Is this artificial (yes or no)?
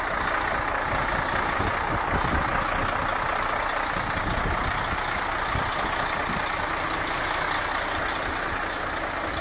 no